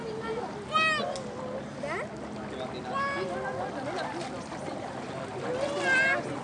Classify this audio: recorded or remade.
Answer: recorded